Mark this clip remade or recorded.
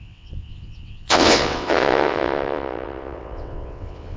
remade